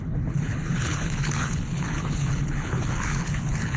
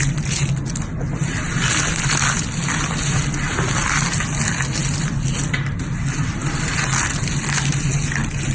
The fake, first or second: first